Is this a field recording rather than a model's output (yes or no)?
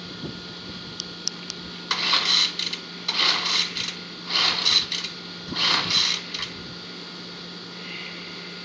yes